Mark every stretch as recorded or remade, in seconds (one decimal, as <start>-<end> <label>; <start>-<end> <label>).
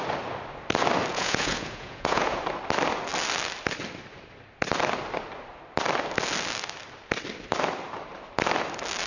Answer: 0.0-1.1 recorded; 1.1-2.4 remade; 2.4-9.1 recorded